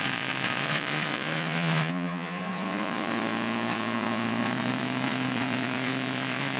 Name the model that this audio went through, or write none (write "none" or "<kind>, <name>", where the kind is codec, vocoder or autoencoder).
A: vocoder, Vocos